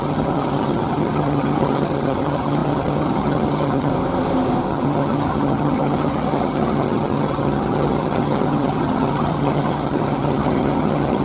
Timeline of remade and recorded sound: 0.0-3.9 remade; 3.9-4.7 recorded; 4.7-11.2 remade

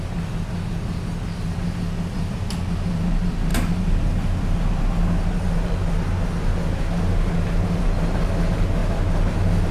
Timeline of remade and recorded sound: 0.0-9.7 recorded

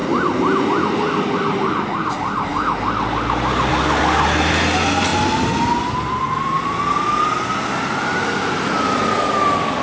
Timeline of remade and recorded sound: 0.0-9.8 recorded

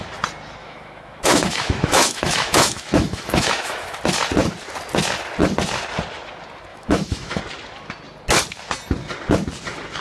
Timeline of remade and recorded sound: 0.0-0.6 recorded; 0.6-4.0 remade; 4.0-6.7 recorded; 6.7-7.4 remade; 7.4-10.0 recorded